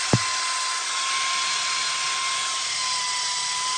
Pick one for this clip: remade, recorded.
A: recorded